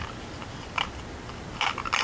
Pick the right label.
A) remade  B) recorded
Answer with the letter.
B